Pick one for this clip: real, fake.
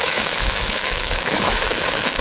fake